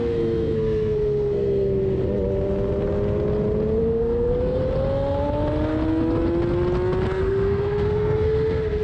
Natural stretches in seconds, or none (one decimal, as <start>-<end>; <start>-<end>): 1.8-3.8; 4.6-7.2